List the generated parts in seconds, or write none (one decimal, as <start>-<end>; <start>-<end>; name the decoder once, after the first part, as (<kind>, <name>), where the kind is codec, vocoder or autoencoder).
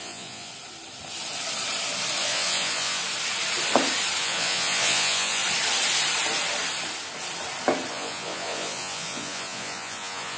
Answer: 0.0-0.5 (vocoder, Vocos); 2.2-3.0; 4.2-5.4; 7.9-10.4